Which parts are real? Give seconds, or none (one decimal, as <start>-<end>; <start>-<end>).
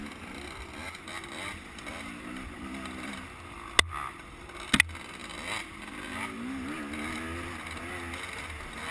0.0-8.9